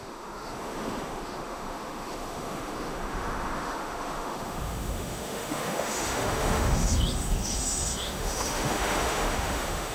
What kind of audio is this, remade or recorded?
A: remade